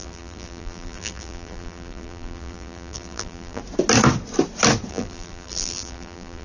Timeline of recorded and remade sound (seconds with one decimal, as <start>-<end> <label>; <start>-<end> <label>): 0.0-3.6 remade; 3.6-4.9 recorded; 4.9-6.4 remade